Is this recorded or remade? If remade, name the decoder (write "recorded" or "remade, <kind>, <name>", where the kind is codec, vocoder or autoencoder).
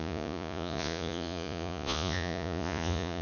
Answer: remade, vocoder, Vocos